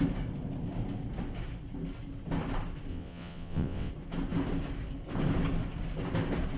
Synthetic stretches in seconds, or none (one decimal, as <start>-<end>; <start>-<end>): 2.9-3.9